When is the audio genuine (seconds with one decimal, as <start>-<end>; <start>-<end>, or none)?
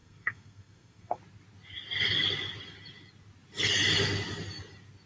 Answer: 1.2-5.1